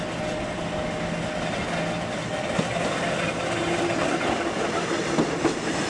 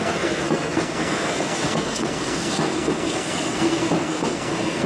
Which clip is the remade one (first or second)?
second